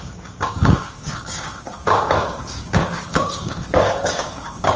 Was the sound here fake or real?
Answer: fake